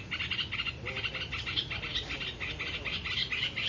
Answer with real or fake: real